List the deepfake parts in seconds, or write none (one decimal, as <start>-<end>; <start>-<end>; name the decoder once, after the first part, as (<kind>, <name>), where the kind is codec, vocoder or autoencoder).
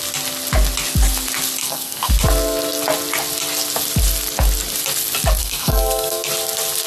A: 1.6-2.1 (codec, SNAC); 5.4-6.3